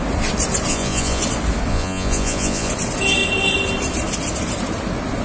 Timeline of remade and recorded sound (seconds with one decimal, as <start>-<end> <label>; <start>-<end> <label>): 0.0-0.7 recorded; 0.7-1.2 remade; 1.2-1.7 recorded; 1.7-2.7 remade; 2.7-5.2 recorded